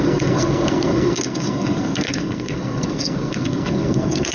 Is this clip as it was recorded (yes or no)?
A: no